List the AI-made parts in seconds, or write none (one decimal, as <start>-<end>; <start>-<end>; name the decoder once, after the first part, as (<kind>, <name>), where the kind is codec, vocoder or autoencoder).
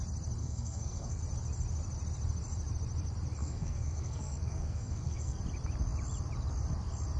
0.4-1.2 (codec, SNAC); 3.4-5.4